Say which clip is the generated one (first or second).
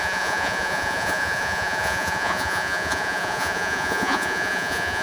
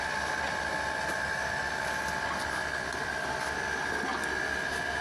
first